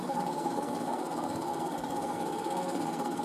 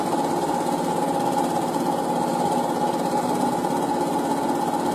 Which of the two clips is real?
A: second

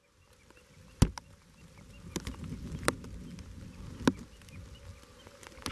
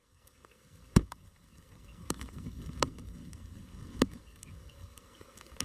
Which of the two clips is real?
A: first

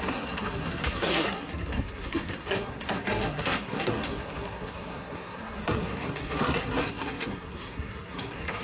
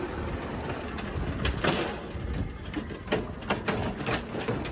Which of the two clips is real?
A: second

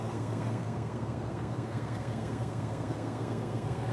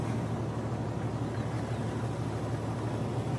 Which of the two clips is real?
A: second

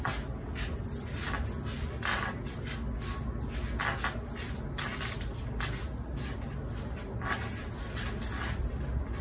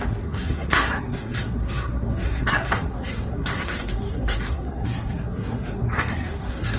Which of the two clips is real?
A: first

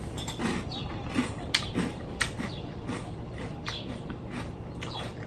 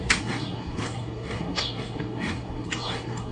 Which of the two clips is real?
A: first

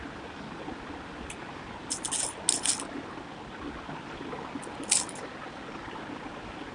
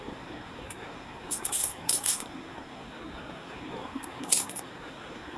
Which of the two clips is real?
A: first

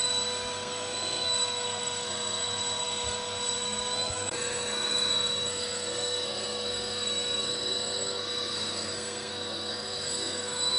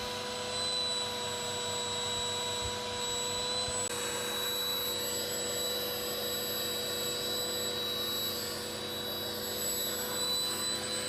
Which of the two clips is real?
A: second